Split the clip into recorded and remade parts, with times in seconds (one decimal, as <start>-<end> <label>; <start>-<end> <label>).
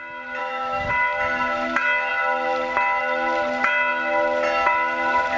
0.0-0.4 recorded; 0.4-0.9 remade; 0.9-5.4 recorded